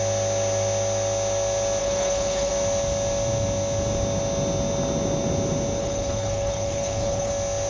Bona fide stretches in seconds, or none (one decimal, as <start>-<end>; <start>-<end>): 0.0-1.8; 2.5-5.8; 7.3-7.7